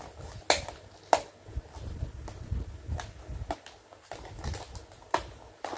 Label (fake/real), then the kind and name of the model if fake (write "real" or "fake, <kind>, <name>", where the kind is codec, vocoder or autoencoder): real